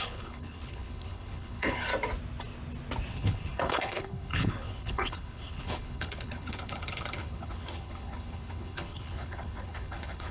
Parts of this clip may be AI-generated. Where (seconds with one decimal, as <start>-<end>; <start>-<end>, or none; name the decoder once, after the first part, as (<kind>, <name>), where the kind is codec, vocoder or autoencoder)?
0.0-1.9 (codec, HILCodec); 3.1-10.3